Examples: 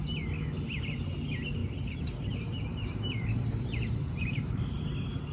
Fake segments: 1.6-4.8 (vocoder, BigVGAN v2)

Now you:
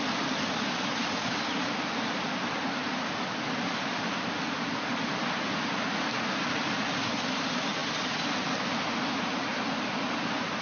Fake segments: none

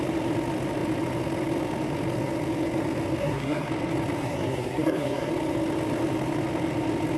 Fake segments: 3.2-3.7 (codec, SNAC); 4.2-5.3